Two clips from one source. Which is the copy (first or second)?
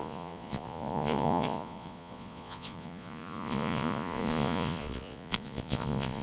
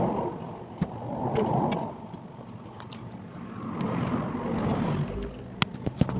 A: first